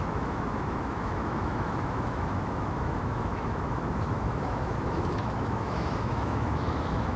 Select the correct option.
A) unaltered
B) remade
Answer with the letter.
B